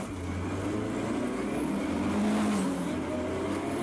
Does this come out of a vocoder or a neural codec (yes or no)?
no